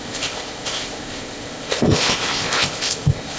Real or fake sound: fake